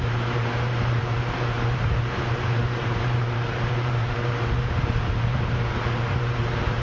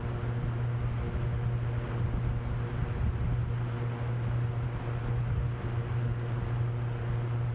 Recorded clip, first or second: second